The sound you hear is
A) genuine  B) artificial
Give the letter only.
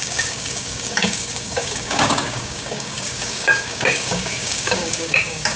B